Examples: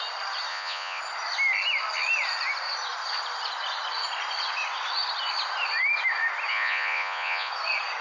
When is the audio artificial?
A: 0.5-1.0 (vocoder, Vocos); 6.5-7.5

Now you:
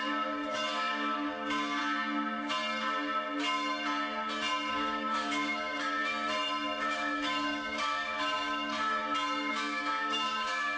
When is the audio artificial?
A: 0.0-1.8 (codec, DAC); 4.7-6.0; 6.8-9.0; 9.5-10.8

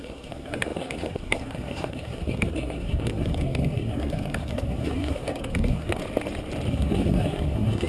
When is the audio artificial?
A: 0.0-6.0 (codec, SNAC); 6.7-7.9

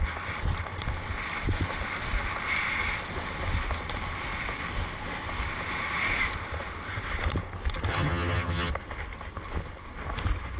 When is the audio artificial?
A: 7.9-8.7 (vocoder, HiFi-GAN)

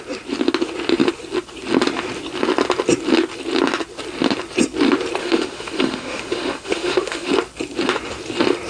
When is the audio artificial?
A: 5.2-7.3 (autoencoder, DAC-VAE)

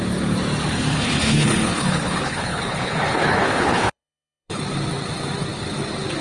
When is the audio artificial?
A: 0.9-4.6 (codec, HILCodec)

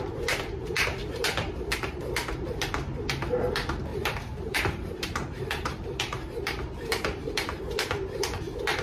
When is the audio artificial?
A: 1.0-2.0 (vocoder, BigVGAN v2); 3.9-7.6

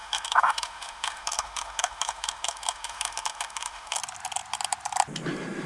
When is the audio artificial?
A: 0.0-4.0 (autoencoder, DAC-VAE)